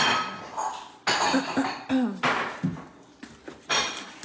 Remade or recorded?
recorded